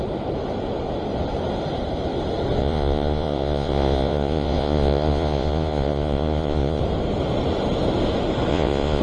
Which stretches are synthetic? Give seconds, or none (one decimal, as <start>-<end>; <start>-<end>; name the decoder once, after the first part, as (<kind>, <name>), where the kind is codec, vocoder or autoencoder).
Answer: 2.6-6.8 (vocoder, Vocos); 8.5-9.0

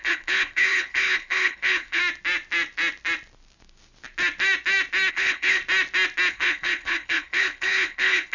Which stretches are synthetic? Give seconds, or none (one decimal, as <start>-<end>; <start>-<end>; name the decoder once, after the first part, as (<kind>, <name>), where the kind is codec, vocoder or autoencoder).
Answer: 0.0-2.0 (codec, HILCodec); 5.1-5.6; 6.3-8.3

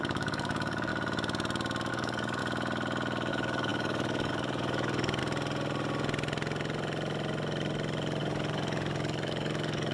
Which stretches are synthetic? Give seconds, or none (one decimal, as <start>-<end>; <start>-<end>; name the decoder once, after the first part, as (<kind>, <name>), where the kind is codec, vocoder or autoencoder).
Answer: 0.0-0.9 (codec, DAC); 1.9-2.4; 3.3-5.2; 8.2-9.9

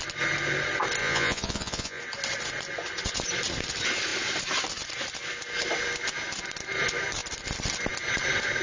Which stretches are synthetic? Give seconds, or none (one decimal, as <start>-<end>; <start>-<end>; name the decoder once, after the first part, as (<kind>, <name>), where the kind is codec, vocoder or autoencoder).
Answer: 1.0-2.0 (vocoder, Vocos)

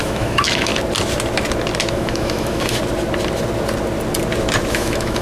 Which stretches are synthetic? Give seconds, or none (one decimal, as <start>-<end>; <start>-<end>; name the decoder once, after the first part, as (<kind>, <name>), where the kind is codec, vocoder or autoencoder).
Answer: 0.0-0.7 (autoencoder, DAC-VAE); 1.9-2.8; 4.7-5.2

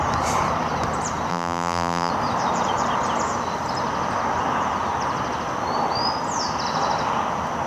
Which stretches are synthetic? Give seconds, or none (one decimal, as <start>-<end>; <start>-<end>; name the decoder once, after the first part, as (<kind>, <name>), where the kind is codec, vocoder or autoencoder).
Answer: 1.3-2.1 (vocoder, BigVGAN v2)